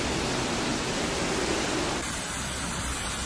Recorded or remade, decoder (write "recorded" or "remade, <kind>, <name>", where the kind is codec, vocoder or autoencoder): recorded